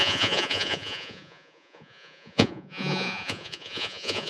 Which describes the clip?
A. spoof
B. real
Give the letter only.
A